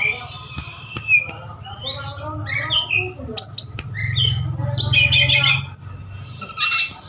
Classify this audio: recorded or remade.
recorded